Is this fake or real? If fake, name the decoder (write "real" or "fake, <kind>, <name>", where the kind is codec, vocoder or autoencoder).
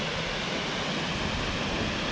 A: real